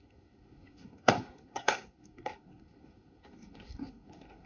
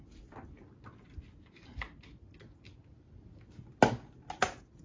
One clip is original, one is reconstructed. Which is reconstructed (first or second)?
first